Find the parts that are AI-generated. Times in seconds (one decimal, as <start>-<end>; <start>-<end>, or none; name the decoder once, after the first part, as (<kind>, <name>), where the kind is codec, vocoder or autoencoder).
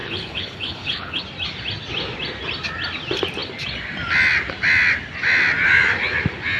0.0-1.2 (codec, HILCodec)